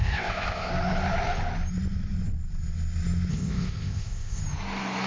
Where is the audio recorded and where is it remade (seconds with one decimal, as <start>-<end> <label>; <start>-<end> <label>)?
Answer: 0.0-0.7 remade; 0.7-3.3 recorded; 3.3-4.4 remade; 4.4-5.1 recorded